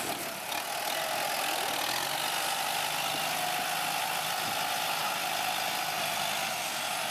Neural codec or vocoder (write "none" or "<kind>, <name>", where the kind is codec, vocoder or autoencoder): none